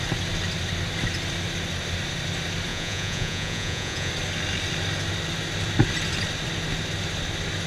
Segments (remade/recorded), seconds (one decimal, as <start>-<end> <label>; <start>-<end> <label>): 0.0-2.7 recorded; 2.7-4.1 remade; 4.1-7.7 recorded